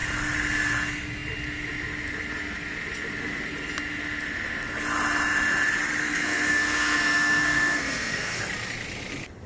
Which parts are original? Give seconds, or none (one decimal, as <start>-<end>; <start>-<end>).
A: 0.0-6.0; 8.4-9.5